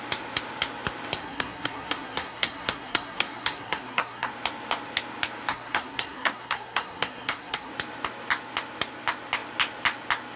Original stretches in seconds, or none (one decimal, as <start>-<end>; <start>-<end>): 0.0-1.2; 4.3-5.5; 7.7-10.4

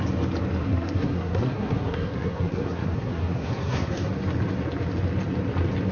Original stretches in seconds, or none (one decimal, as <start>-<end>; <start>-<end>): 0.0-0.6; 4.1-5.9

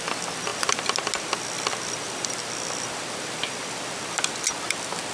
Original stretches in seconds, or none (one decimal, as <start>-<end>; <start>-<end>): 0.0-5.1

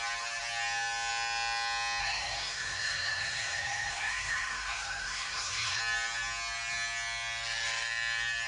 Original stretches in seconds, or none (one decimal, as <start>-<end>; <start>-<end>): 0.0-2.0; 5.8-8.5